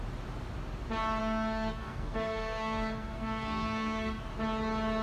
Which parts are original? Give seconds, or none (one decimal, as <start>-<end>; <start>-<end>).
0.0-1.2; 4.2-5.0